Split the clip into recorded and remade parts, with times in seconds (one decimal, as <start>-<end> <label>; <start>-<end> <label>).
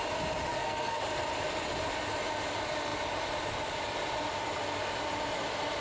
0.0-0.5 recorded; 0.5-1.0 remade; 1.0-5.8 recorded